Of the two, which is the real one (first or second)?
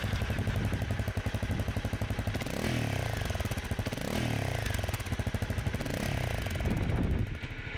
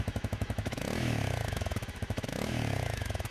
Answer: first